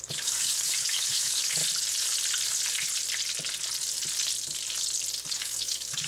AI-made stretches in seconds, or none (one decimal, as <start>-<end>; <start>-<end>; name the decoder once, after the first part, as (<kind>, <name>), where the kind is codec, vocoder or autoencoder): 0.0-1.6 (codec, DAC); 5.3-6.1